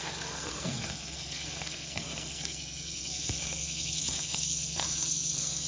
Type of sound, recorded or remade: remade